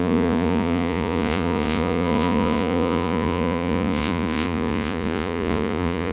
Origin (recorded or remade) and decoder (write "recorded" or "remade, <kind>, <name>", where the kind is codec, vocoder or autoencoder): remade, vocoder, Vocos